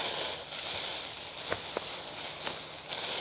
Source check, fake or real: real